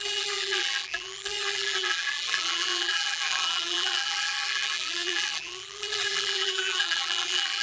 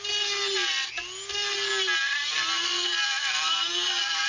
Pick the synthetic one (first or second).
first